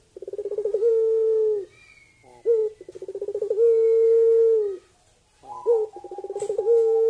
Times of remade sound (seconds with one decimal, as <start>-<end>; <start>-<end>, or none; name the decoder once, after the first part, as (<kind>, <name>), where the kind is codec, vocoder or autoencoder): 0.4-0.9 (vocoder, Vocos)